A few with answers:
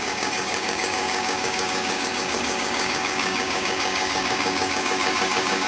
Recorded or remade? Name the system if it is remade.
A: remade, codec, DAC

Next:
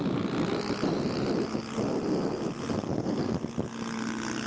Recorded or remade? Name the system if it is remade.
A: recorded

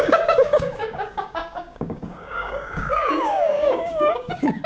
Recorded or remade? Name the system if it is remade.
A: remade, codec, DAC